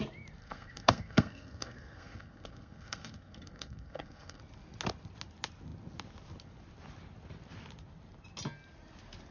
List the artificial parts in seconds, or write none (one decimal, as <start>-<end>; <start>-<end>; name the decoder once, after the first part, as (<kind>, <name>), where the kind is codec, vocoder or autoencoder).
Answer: 0.4-4.4 (codec, SNAC)

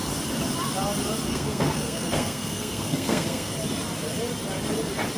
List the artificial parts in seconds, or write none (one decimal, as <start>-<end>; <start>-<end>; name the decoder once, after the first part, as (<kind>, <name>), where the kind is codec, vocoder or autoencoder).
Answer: 1.3-3.5 (codec, SNAC)

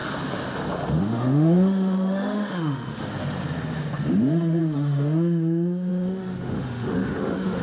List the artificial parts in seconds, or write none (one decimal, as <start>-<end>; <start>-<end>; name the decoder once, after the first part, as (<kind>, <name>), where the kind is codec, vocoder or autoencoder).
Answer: 1.0-3.1 (autoencoder, DAC-VAE); 4.1-7.6